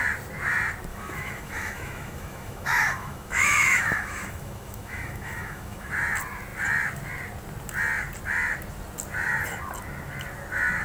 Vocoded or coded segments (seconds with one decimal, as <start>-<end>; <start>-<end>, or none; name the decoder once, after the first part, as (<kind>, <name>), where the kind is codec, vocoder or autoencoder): 0.9-5.9 (autoencoder, DAC-VAE)